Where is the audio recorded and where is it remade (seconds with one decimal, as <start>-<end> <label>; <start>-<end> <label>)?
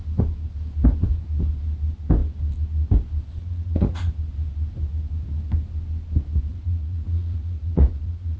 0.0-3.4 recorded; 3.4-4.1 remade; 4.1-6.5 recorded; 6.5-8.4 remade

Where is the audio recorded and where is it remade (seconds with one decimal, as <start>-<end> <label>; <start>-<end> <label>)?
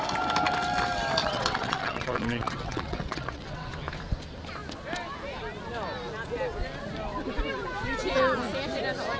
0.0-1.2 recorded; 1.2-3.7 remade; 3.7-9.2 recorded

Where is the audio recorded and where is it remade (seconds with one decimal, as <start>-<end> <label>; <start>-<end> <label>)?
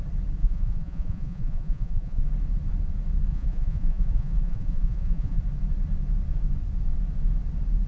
0.0-0.4 recorded; 0.4-2.2 remade; 2.2-3.3 recorded; 3.3-5.4 remade; 5.4-7.9 recorded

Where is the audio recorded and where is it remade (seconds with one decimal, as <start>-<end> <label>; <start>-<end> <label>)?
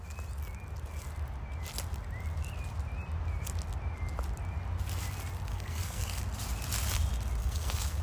0.0-5.5 recorded; 5.5-6.2 remade; 6.2-7.4 recorded; 7.4-8.0 remade